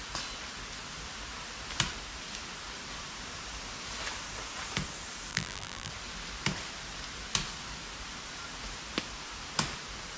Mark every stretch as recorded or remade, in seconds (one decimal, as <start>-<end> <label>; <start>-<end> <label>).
0.0-5.3 recorded; 5.3-5.9 remade; 5.9-10.2 recorded